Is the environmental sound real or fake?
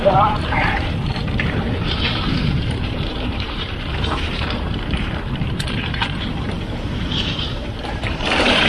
fake